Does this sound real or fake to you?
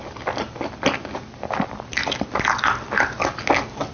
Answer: real